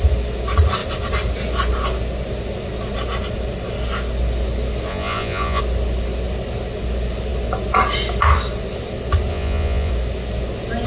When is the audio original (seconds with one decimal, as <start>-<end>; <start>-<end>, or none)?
0.0-4.9; 5.6-9.3; 9.9-10.9